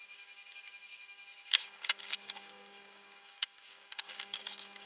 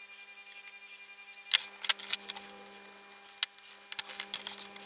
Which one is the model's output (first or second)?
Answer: first